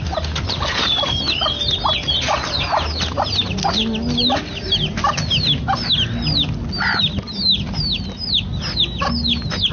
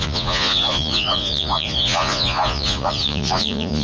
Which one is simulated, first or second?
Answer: second